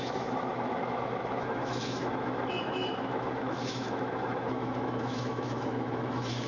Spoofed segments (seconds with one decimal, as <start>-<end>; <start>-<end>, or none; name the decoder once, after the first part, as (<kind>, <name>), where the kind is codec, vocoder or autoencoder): 0.0-6.5 (autoencoder, DAC-VAE)